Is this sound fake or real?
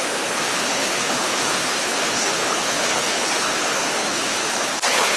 fake